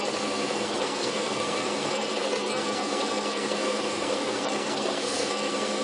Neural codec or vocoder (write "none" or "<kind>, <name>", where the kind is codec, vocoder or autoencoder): codec, SNAC